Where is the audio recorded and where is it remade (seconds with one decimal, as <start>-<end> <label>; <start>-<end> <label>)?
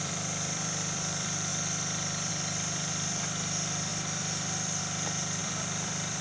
0.0-1.5 remade; 1.5-2.3 recorded; 2.3-6.2 remade